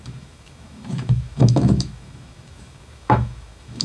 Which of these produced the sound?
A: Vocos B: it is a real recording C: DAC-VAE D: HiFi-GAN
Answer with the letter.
C